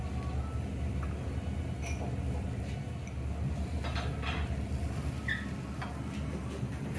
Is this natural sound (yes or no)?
yes